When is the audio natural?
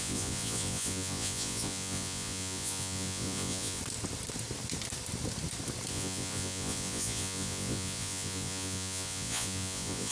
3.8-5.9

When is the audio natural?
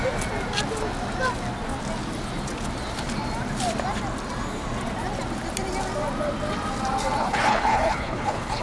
0.0-7.2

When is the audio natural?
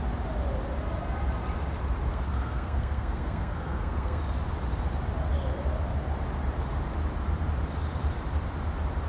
0.0-2.1; 4.2-9.1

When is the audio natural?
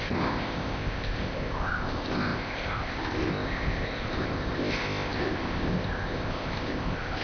none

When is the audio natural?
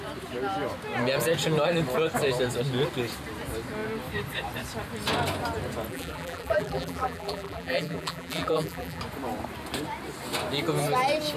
0.0-5.9; 9.0-11.4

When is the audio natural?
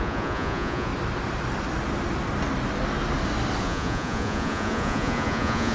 0.9-3.6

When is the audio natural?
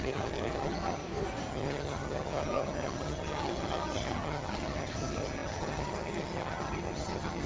1.0-1.5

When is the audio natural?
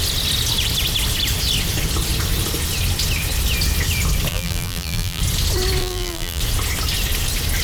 0.0-4.3; 5.2-5.8; 6.4-7.6